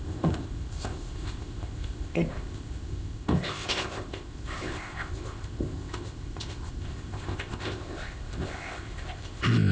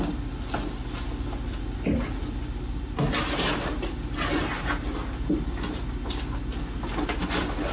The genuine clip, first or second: second